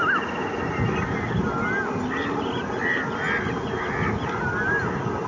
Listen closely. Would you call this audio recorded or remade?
recorded